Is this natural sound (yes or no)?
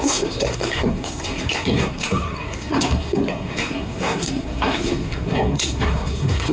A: no